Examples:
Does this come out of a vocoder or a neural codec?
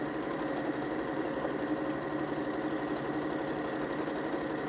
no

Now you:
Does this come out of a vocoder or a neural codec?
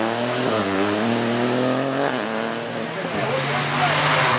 no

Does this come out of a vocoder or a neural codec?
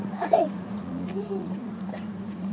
yes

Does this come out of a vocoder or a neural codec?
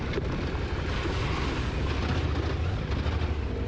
no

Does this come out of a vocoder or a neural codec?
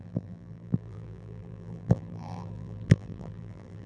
yes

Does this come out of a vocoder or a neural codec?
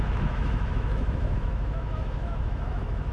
yes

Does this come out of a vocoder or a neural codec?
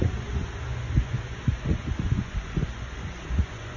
yes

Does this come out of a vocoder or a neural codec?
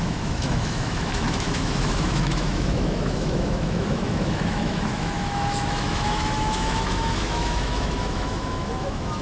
yes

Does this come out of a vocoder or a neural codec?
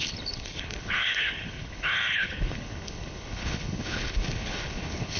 yes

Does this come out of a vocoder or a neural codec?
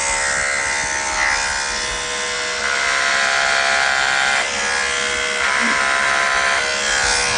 no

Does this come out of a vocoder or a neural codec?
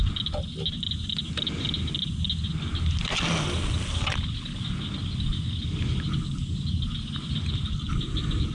no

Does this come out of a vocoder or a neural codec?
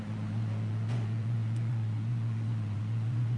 yes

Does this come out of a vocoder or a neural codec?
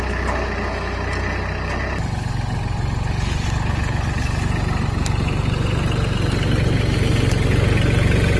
no